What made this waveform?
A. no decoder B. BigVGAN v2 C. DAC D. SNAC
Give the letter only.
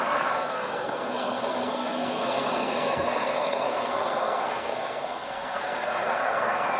D